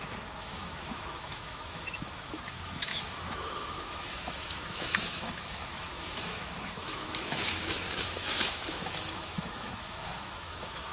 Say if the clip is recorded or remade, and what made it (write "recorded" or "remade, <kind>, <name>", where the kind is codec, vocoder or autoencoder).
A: remade, autoencoder, DAC-VAE